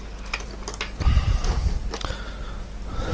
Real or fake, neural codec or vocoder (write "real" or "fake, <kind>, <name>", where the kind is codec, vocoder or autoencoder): real